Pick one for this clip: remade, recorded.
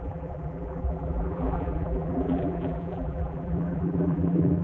remade